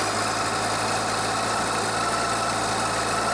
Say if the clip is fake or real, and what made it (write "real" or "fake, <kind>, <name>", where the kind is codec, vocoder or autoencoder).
real